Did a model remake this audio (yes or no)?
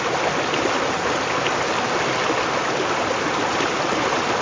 no